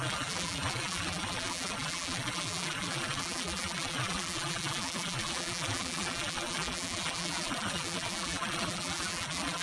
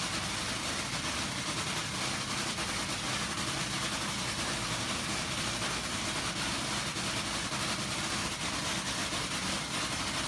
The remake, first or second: first